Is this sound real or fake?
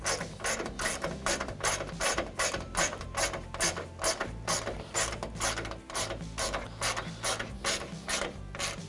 real